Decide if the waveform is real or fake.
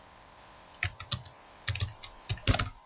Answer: real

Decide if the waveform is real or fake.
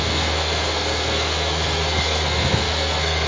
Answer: fake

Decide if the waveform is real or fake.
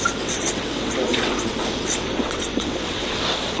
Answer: fake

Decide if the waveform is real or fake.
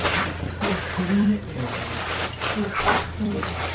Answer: fake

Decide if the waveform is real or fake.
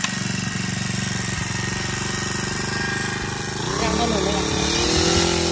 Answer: real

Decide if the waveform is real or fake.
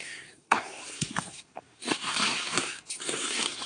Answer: fake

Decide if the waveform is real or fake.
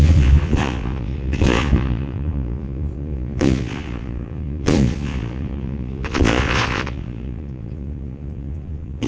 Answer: fake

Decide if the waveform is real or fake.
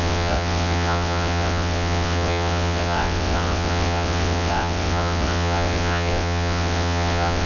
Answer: fake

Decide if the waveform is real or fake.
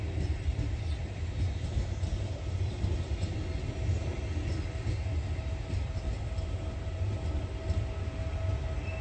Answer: real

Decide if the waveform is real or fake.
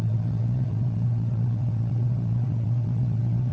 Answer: fake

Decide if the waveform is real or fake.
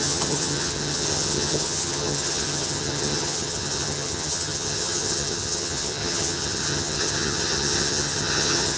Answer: fake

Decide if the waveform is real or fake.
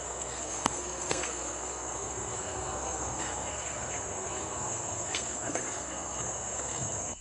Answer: fake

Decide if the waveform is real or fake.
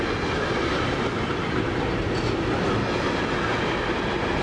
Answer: real